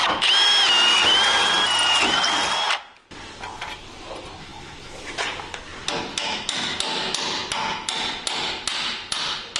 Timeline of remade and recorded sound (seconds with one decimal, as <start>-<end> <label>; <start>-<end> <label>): 0.0-9.6 recorded